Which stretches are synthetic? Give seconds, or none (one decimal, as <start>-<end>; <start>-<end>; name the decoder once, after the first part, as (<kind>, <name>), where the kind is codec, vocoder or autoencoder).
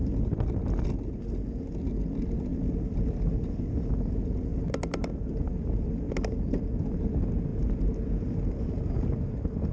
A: 2.5-3.2 (vocoder, BigVGAN v2); 4.5-6.9